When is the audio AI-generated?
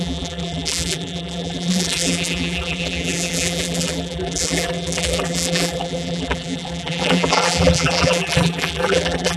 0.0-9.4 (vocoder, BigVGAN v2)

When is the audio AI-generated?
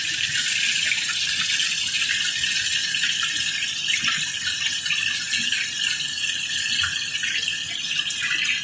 none